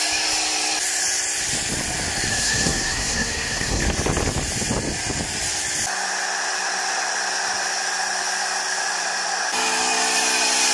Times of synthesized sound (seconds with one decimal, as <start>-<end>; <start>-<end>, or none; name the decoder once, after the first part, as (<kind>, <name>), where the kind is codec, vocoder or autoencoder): 2.3-3.8 (codec, SNAC)